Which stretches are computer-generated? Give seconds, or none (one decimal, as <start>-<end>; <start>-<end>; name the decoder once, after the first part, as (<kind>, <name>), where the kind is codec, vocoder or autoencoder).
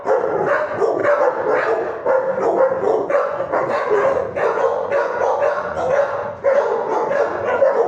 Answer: 0.0-1.0 (vocoder, Vocos); 2.8-7.9